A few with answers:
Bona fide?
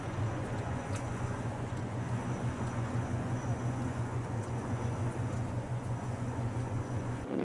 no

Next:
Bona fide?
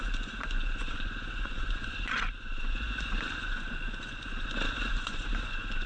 no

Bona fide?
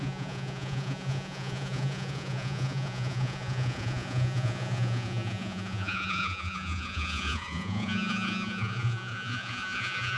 no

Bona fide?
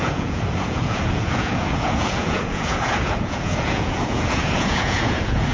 no